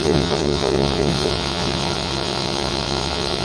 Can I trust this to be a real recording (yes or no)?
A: no